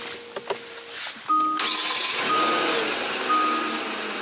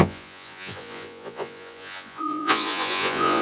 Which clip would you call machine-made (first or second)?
second